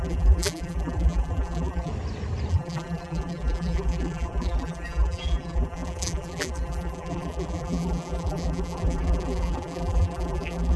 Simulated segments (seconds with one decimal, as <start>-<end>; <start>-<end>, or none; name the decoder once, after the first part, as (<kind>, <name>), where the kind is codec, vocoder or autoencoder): 0.0-1.9 (vocoder, BigVGAN v2); 2.5-10.8